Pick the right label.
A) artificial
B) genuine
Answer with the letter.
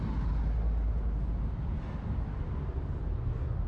B